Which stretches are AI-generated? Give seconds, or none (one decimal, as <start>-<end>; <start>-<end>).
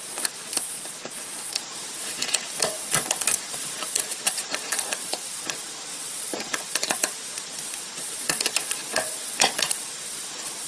0.0-10.7